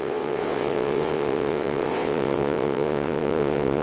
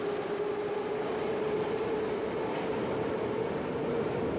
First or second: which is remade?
first